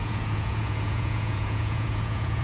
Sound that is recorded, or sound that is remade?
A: remade